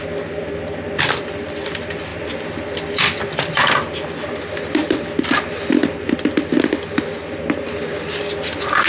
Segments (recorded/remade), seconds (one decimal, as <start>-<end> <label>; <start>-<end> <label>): 0.0-8.9 recorded